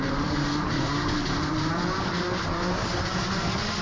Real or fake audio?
fake